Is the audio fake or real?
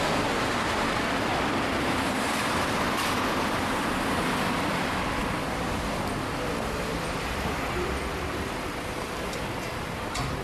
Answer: fake